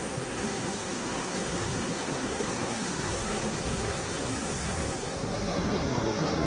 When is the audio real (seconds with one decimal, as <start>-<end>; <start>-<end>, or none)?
none